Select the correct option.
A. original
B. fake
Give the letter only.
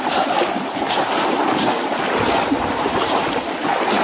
A